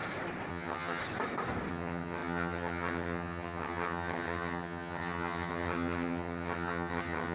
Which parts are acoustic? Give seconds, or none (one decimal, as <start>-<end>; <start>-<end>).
0.0-0.5; 1.0-1.7